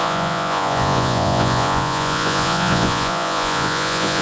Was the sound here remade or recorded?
remade